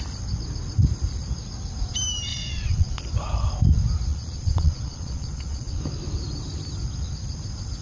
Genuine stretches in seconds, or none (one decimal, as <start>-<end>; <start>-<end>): 0.0-2.3; 3.0-4.1; 5.8-7.8